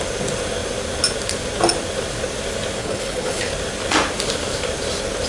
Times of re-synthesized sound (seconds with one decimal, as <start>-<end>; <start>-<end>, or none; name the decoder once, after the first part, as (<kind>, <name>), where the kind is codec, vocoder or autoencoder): 2.8-3.5 (codec, HILCodec)